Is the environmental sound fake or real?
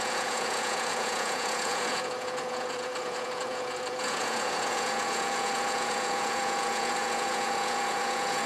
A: fake